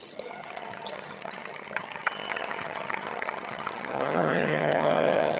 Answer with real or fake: fake